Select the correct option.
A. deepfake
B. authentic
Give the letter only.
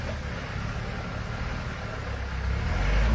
B